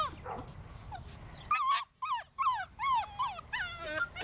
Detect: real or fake real